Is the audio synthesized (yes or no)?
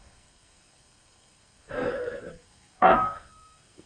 yes